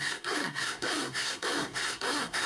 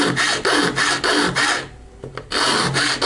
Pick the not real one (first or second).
first